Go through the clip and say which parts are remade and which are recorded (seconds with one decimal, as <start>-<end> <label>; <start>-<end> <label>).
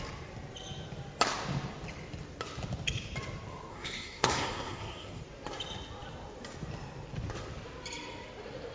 0.0-3.7 recorded; 3.7-5.2 remade; 5.2-8.7 recorded